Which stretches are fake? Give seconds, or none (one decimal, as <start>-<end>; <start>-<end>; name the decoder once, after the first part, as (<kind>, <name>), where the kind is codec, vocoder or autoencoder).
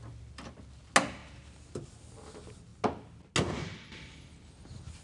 none